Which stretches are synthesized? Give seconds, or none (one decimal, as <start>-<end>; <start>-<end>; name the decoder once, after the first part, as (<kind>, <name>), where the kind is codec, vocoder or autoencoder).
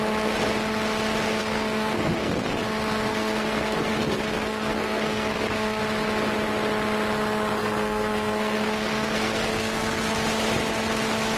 1.4-2.6 (codec, SNAC); 3.1-5.8; 7.6-10.1